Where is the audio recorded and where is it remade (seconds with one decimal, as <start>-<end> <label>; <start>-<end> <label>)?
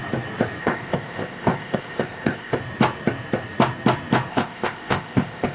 0.0-0.6 recorded; 0.6-2.6 remade; 2.6-4.3 recorded; 4.3-5.5 remade